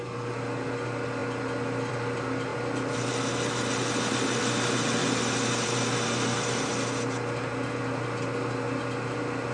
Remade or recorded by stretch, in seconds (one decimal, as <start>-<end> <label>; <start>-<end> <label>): 0.0-9.5 recorded